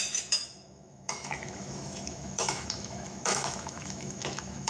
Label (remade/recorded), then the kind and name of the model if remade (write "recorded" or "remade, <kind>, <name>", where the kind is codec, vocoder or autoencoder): remade, autoencoder, DAC-VAE